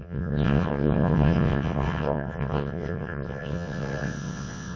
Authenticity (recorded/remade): remade